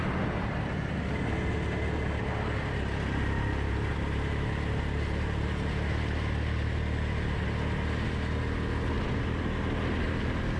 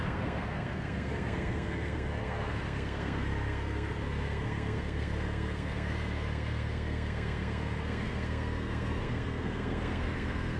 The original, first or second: first